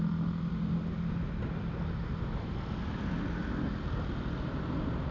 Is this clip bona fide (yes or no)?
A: yes